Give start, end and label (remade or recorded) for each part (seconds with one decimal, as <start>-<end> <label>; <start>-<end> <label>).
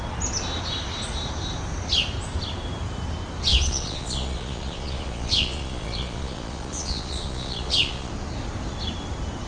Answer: 0.0-3.5 recorded; 3.5-8.1 remade; 8.1-9.5 recorded